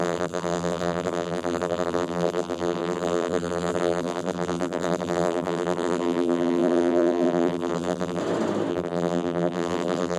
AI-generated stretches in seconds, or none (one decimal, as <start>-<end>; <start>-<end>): 0.0-8.2; 8.7-10.2